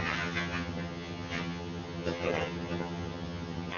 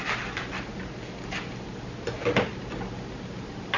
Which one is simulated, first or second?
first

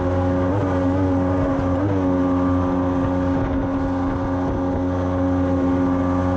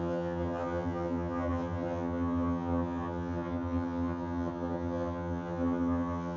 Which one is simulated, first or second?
second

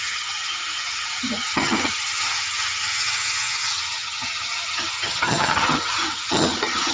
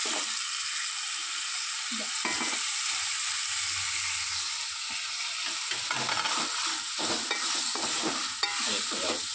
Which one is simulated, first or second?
first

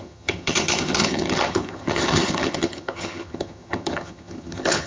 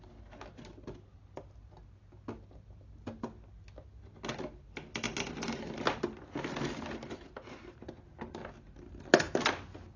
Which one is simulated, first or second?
first